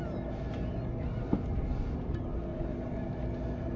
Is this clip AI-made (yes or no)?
no